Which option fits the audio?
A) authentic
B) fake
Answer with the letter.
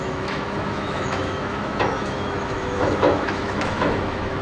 B